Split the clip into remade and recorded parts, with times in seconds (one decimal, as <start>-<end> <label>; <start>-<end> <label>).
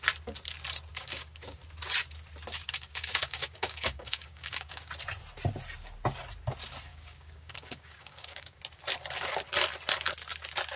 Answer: 0.0-0.9 recorded; 0.9-1.6 remade; 1.6-2.5 recorded; 2.5-4.9 remade; 4.9-6.9 recorded; 6.9-8.6 remade; 8.6-10.8 recorded